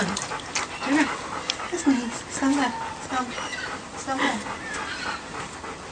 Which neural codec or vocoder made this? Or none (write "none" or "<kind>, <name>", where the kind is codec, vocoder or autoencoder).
none